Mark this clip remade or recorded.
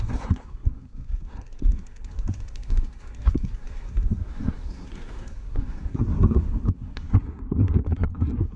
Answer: remade